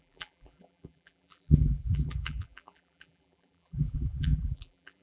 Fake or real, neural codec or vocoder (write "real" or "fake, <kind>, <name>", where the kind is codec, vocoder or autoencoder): fake, vocoder, BigVGAN v2